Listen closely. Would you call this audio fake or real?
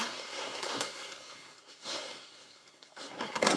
fake